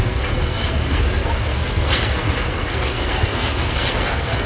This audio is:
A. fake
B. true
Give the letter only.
A